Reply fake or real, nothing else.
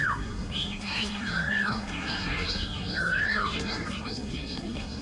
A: fake